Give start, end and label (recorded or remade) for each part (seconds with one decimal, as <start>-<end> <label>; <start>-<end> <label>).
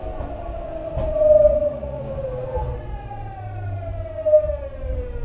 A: 0.0-1.5 recorded; 1.5-2.0 remade; 2.0-5.2 recorded